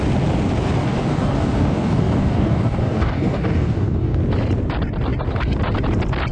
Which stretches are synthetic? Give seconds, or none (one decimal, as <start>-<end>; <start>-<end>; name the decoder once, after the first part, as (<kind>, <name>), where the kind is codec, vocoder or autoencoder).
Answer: 0.8-4.2 (codec, DAC)

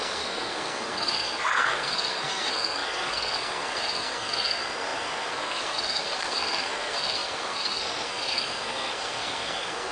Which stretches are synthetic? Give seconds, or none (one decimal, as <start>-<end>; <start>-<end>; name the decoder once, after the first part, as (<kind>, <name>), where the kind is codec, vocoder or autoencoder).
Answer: 0.0-9.9 (codec, SNAC)

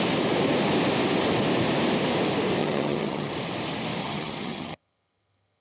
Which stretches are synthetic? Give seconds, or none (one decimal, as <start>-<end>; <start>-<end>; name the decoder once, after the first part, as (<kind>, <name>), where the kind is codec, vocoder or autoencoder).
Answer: 2.6-3.3 (vocoder, HiFi-GAN); 4.0-5.6

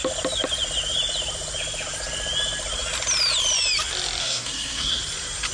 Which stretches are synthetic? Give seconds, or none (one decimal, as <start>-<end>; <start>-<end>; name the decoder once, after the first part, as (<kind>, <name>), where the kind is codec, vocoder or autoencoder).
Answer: 4.2-5.0 (codec, SNAC)

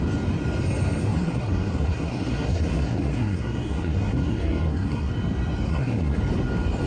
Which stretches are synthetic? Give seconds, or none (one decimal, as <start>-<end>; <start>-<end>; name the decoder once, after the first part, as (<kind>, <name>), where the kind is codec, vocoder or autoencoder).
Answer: 1.0-5.1 (codec, SNAC); 5.7-6.2

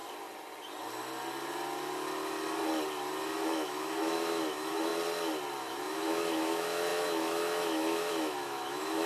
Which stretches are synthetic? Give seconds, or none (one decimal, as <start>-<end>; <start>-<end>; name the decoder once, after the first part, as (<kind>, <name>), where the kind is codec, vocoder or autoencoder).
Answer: 3.5-4.9 (autoencoder, DAC-VAE); 5.6-9.1

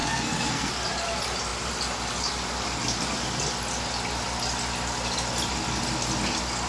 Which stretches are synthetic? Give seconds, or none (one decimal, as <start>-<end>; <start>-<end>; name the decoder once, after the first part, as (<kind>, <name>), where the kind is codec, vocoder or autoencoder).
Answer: 0.0-0.7 (codec, SNAC)